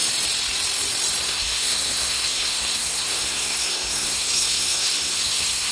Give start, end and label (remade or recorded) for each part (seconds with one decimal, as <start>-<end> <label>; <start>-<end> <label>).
0.0-1.2 recorded; 1.2-5.7 remade